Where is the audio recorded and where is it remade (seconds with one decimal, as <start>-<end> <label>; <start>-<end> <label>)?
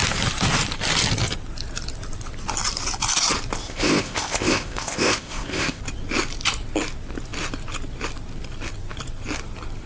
0.0-3.6 recorded; 3.6-5.8 remade; 5.8-9.9 recorded